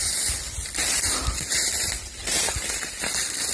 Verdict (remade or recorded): recorded